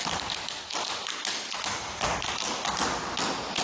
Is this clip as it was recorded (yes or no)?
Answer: yes